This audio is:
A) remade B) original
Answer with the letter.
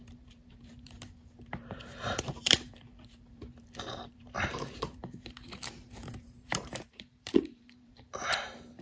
A